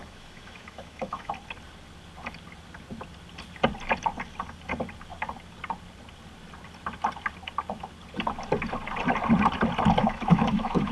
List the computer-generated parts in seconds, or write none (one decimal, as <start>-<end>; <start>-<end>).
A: 0.0-1.3; 10.0-10.9